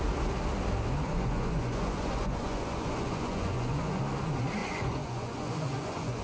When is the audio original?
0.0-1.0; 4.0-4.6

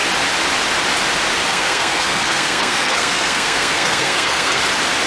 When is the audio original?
0.0-1.5; 4.6-5.1

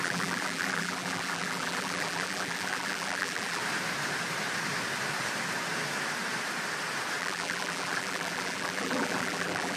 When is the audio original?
3.6-7.2

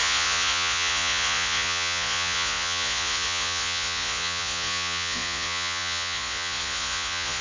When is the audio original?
none

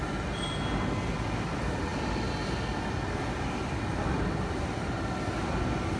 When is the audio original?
0.0-6.0